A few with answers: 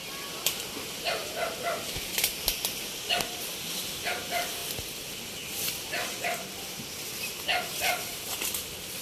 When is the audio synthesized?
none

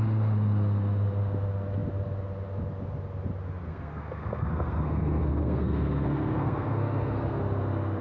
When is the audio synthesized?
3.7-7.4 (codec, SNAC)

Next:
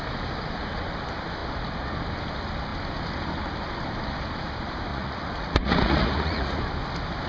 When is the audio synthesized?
4.9-6.6 (vocoder, Vocos)

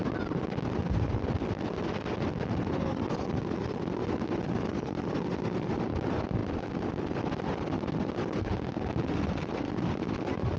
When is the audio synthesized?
none

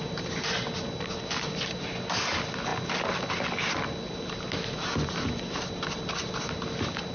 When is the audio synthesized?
none